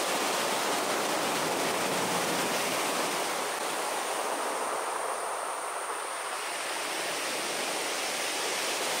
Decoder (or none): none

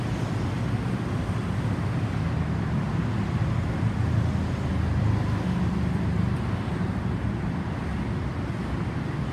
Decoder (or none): none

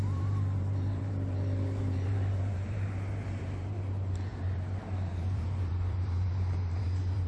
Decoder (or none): vocoder, BigVGAN v2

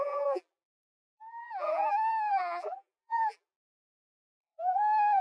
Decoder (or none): vocoder, BigVGAN v2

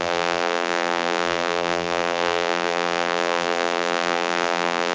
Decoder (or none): vocoder, BigVGAN v2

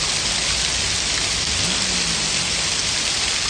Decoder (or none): none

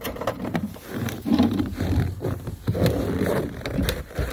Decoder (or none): vocoder, BigVGAN v2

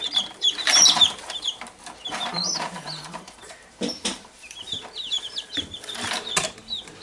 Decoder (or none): vocoder, BigVGAN v2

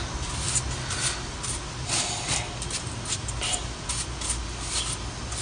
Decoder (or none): none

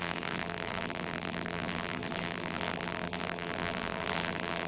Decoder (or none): vocoder, BigVGAN v2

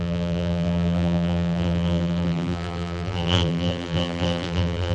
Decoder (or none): vocoder, BigVGAN v2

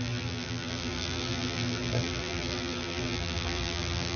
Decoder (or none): vocoder, BigVGAN v2